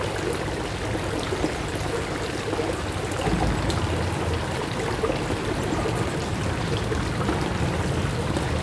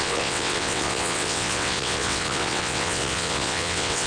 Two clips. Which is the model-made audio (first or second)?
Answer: second